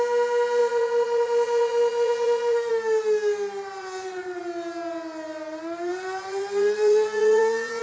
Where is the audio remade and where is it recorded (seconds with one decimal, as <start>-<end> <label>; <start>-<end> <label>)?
0.0-0.6 recorded; 0.6-2.7 remade; 2.7-3.8 recorded; 3.8-4.4 remade; 4.4-5.9 recorded; 5.9-7.8 remade